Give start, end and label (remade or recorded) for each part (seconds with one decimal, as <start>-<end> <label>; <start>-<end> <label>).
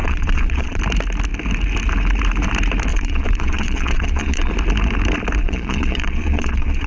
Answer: 0.0-0.8 remade; 0.8-2.9 recorded; 2.9-4.5 remade; 4.5-5.4 recorded; 5.4-6.9 remade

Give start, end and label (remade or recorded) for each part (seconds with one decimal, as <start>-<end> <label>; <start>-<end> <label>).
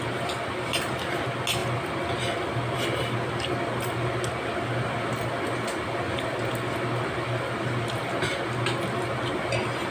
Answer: 0.0-9.9 recorded